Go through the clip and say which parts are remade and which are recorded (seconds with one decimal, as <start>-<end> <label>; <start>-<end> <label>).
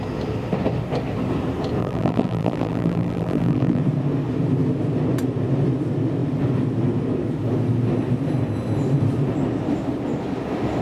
0.0-1.8 recorded; 1.8-3.8 remade; 3.8-10.8 recorded